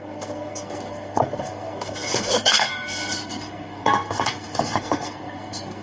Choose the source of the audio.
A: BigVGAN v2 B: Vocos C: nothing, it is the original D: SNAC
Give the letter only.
D